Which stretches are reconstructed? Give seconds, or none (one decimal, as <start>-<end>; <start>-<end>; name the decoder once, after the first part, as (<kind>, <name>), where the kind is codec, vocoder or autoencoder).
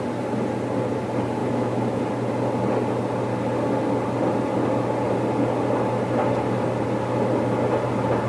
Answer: 1.4-2.0 (autoencoder, DAC-VAE)